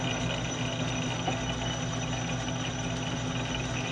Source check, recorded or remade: recorded